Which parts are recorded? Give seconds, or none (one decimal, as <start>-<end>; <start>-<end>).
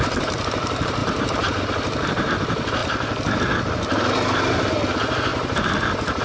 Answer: 0.0-1.0; 1.6-5.3